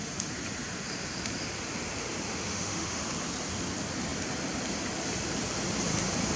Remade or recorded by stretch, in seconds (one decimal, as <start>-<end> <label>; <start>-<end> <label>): 0.0-2.3 recorded; 2.3-3.0 remade; 3.0-6.4 recorded